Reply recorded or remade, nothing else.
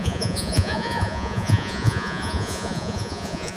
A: remade